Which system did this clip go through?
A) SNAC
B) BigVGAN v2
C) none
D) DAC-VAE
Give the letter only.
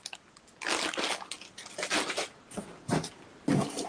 C